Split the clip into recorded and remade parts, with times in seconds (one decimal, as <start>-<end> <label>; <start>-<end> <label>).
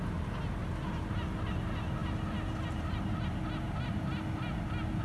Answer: 0.0-5.0 recorded